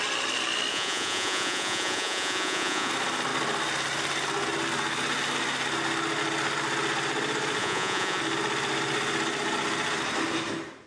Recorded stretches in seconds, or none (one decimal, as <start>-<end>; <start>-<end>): 0.0-0.7; 2.9-7.6; 8.2-10.9